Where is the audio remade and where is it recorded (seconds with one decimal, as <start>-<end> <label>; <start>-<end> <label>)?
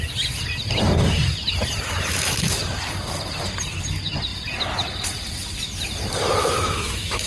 0.0-2.1 recorded; 2.1-2.6 remade; 2.6-6.4 recorded; 6.4-7.3 remade